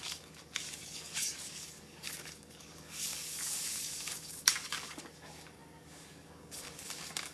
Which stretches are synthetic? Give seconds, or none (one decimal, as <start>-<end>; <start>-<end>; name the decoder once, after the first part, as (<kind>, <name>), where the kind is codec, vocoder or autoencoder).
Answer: 0.0-7.3 (codec, DAC)

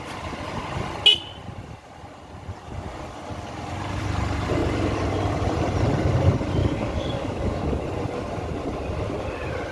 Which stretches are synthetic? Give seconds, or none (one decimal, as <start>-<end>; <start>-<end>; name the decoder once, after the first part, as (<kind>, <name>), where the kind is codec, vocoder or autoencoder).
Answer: 6.6-7.8 (codec, DAC)